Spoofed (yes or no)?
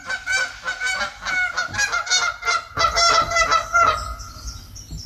no